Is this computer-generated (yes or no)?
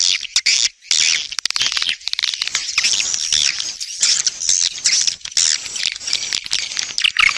no